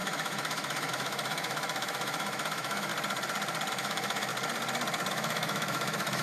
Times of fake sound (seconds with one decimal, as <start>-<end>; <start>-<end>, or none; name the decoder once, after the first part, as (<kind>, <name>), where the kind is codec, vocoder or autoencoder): 0.0-2.9 (autoencoder, DAC-VAE); 3.7-4.3; 5.1-6.2